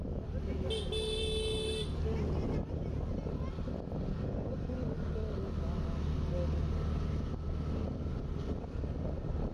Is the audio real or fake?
real